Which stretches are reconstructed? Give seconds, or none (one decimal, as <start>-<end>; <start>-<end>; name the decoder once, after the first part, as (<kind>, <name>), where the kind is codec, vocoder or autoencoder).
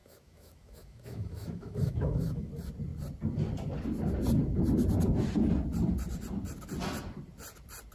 0.0-2.5 (autoencoder, DAC-VAE)